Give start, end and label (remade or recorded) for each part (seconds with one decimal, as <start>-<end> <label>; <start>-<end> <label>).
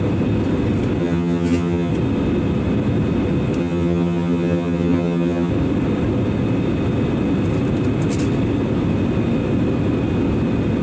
0.0-1.0 recorded; 1.0-1.9 remade; 1.9-3.6 recorded; 3.6-5.5 remade; 5.5-10.8 recorded